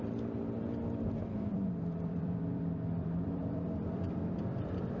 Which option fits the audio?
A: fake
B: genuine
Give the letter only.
A